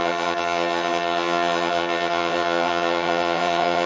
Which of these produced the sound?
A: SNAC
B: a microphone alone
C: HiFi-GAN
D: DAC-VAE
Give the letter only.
C